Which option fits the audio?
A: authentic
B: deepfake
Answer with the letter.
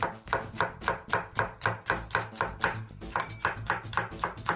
A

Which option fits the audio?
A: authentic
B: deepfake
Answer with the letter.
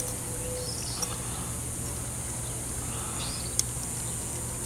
A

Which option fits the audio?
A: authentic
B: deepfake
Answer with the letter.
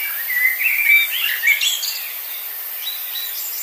A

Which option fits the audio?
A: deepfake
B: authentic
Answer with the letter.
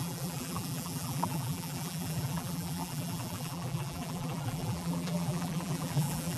A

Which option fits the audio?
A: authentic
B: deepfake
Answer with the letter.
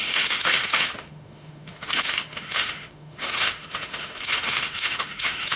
B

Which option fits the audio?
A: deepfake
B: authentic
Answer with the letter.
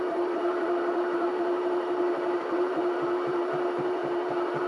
A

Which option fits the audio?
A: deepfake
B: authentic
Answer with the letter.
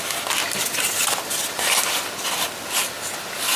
B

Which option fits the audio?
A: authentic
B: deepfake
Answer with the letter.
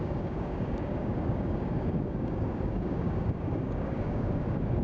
B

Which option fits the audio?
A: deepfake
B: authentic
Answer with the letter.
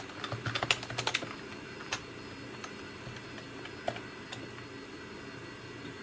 B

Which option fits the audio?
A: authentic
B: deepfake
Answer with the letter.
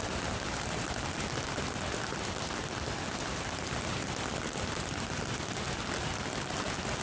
B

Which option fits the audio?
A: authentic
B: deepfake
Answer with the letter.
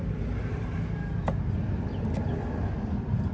A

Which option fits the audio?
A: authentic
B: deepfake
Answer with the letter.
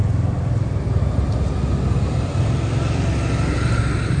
A